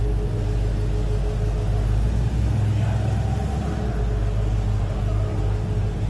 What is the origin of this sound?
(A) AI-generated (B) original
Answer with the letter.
B